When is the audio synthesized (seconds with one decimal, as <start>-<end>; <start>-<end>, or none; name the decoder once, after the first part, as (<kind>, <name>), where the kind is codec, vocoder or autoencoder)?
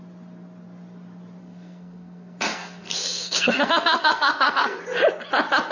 1.4-4.8 (codec, SNAC)